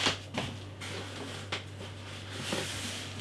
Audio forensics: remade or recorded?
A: recorded